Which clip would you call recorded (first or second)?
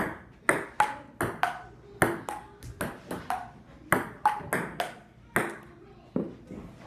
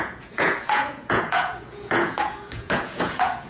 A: first